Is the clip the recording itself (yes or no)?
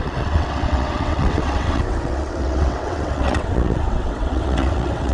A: no